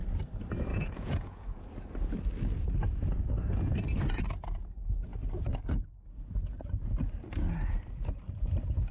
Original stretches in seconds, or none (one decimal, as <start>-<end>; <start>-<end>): 0.0-0.7; 1.7-8.9